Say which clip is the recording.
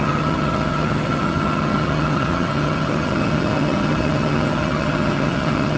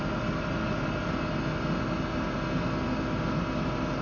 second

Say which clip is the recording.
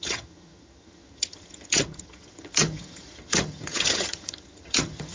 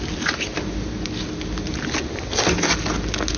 second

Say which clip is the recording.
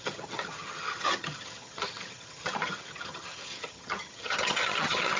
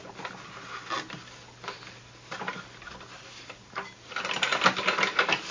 second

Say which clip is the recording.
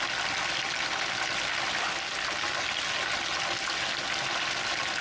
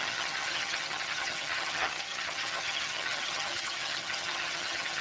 first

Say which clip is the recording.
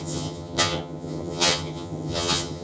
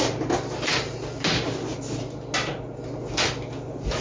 second